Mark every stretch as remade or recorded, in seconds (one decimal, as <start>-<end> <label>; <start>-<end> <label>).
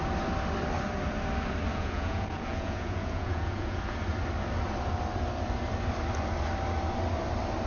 0.0-1.7 recorded; 1.7-4.0 remade; 4.0-7.7 recorded